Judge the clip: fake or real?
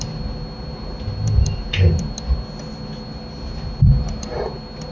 real